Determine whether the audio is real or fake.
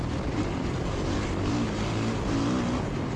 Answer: real